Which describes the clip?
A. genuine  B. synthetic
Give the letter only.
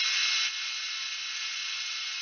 A